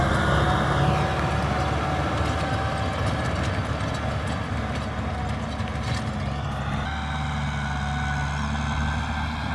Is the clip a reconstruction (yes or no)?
no